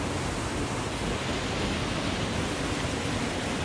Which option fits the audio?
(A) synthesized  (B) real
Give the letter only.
B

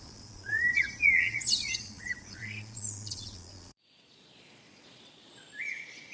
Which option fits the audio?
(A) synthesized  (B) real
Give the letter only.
A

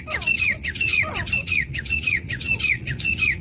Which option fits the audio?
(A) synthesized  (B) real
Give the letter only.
A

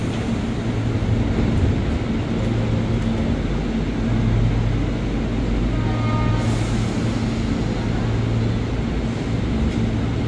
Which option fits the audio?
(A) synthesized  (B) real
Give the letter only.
B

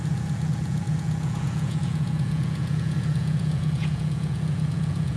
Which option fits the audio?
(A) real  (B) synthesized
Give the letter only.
B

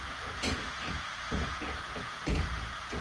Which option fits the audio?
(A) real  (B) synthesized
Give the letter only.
B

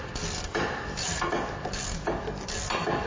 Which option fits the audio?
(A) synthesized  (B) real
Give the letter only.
B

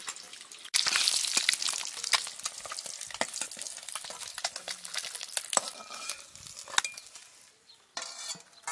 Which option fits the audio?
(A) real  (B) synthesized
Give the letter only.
A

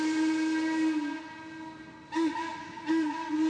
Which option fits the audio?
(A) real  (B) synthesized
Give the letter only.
A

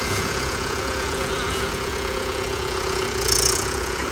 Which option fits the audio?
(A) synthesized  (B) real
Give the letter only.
A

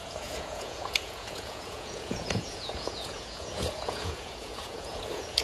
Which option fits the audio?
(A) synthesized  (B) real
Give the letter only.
A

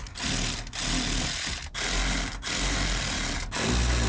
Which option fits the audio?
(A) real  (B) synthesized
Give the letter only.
A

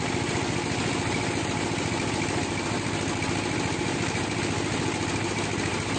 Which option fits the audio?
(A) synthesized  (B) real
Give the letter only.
B